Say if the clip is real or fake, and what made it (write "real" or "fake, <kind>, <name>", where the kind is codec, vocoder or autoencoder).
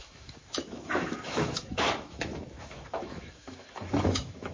fake, autoencoder, DAC-VAE